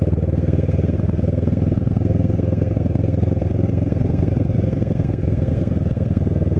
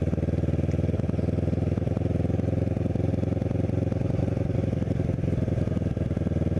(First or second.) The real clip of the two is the second